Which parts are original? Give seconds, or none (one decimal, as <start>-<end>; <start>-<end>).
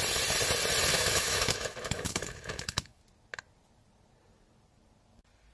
0.0-0.9; 3.0-5.5